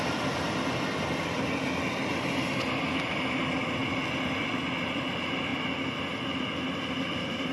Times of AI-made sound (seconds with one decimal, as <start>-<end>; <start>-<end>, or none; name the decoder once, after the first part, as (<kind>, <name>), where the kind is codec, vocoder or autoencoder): none

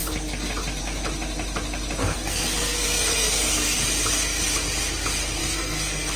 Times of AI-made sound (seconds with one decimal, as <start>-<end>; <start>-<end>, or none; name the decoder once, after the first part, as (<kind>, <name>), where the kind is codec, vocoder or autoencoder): 2.0-3.8 (codec, SNAC); 5.4-6.2